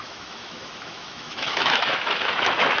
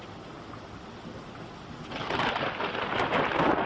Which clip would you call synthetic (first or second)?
first